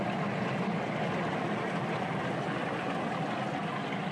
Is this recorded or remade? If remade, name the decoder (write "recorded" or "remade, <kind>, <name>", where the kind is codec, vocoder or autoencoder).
recorded